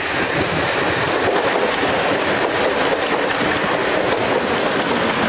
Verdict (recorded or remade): recorded